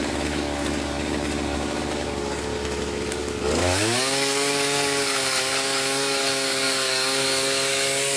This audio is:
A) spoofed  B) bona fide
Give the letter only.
A